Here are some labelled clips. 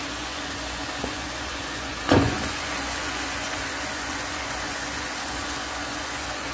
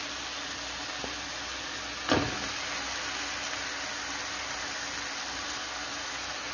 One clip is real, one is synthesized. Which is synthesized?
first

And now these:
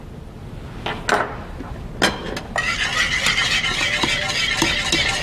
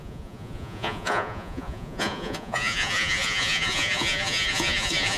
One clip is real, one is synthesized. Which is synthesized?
second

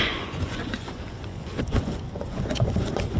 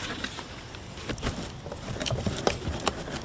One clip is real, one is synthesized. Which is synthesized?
first